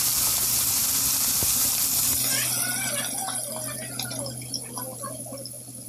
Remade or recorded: recorded